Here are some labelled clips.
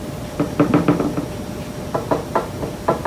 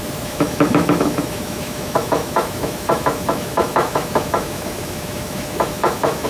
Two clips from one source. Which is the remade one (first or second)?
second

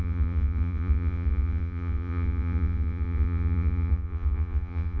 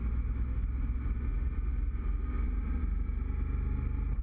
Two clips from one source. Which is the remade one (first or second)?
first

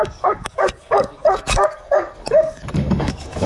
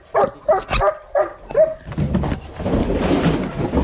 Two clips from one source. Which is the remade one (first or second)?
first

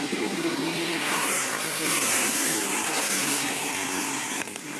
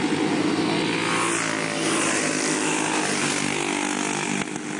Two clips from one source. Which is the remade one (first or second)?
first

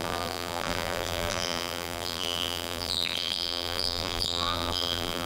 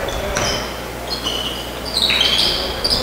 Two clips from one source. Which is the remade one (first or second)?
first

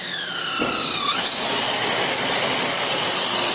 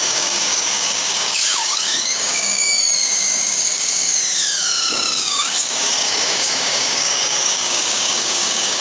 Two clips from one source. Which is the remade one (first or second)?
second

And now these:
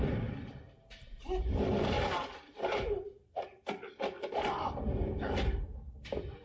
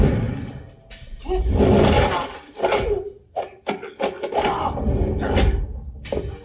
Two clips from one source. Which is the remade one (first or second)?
first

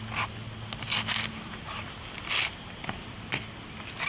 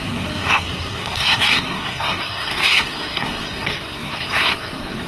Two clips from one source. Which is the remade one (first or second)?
second